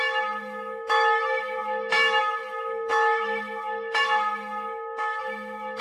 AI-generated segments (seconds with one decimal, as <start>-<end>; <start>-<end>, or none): 0.0-5.8